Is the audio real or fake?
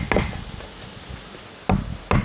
real